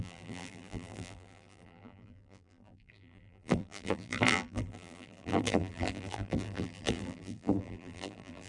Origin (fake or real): fake